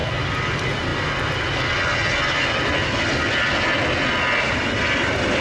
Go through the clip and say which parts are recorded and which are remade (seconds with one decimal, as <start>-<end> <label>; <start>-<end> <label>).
0.0-5.4 recorded